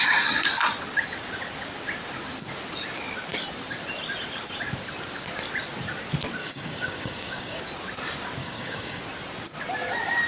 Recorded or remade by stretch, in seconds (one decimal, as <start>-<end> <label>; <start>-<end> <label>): 0.0-6.4 recorded; 6.4-7.6 remade; 7.6-8.4 recorded; 8.4-9.0 remade; 9.0-10.3 recorded